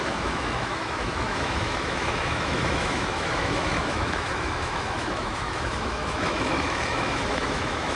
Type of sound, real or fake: fake